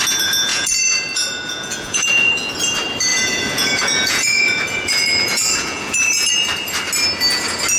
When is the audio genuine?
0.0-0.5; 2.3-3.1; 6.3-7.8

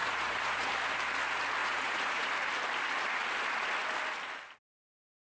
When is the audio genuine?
0.7-1.6; 2.3-5.3

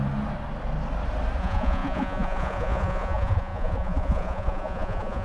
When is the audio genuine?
0.0-1.4

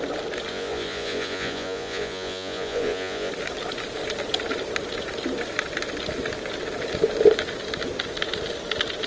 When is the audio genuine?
0.0-0.5; 3.3-9.1

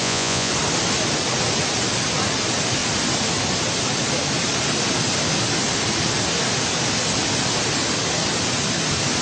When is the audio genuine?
0.5-9.2

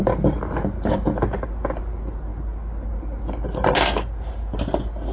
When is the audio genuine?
0.0-5.1

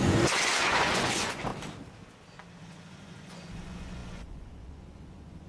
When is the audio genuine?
1.5-2.6